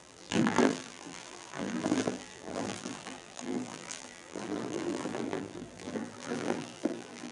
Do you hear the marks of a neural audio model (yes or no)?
yes